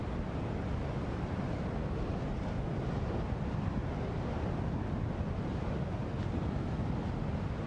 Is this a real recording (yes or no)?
yes